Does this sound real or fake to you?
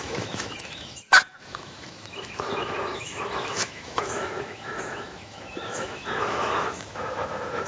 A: fake